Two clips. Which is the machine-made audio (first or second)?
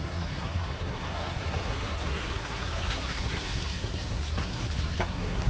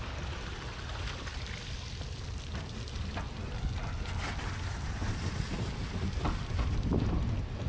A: first